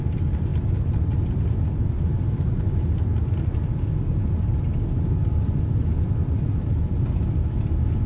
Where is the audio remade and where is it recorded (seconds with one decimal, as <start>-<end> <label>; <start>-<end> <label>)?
0.0-8.1 recorded